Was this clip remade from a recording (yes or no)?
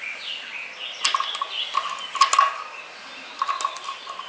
no